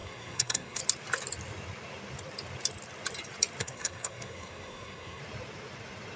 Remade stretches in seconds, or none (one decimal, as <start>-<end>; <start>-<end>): 0.0-0.8; 3.6-5.2